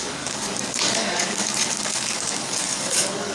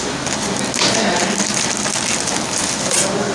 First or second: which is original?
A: second